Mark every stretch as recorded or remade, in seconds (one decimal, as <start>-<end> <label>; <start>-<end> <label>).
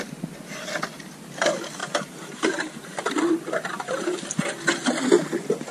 0.0-1.8 recorded; 1.8-3.0 remade; 3.0-5.7 recorded